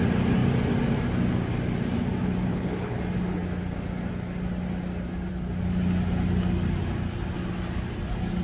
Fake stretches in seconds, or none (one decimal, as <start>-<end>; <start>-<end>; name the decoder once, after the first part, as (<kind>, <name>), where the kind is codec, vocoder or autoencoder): 2.5-3.0 (codec, HILCodec)